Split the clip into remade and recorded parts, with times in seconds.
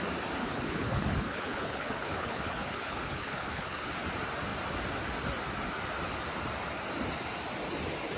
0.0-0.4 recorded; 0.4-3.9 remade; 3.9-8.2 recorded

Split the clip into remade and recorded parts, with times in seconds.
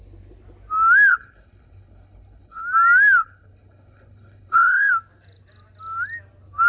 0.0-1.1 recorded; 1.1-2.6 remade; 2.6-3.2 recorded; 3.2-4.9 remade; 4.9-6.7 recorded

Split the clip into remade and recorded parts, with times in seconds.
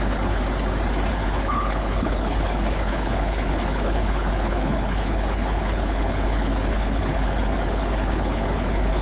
0.0-0.4 remade; 0.4-1.1 recorded; 1.1-9.0 remade